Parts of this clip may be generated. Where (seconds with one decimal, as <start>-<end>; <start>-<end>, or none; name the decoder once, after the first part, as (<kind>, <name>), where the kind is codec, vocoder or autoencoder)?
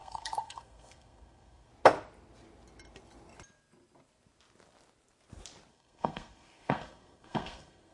0.0-1.7 (codec, SNAC); 5.7-7.9